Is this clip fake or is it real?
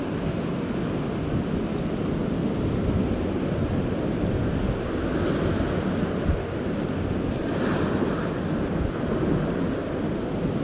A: real